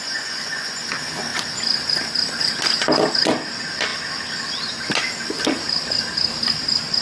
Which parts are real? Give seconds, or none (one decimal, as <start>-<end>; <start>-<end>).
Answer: 0.8-7.0